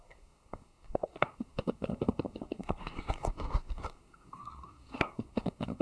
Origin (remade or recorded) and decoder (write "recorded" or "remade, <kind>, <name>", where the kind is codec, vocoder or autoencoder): remade, codec, SNAC